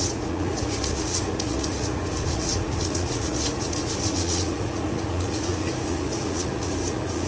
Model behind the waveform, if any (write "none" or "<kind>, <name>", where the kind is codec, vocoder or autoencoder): vocoder, Vocos